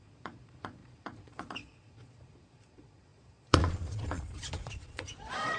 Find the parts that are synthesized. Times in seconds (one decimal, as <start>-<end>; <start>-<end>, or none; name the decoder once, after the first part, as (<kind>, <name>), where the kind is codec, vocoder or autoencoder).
0.0-5.6 (vocoder, Vocos)